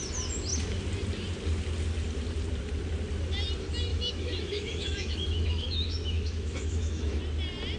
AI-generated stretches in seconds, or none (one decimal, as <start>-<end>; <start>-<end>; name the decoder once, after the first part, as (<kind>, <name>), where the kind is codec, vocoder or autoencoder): 3.9-7.2 (autoencoder, DAC-VAE)